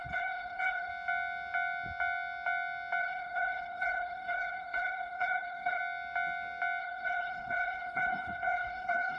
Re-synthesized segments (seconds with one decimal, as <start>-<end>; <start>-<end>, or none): 0.0-0.9; 3.0-5.8; 6.8-9.2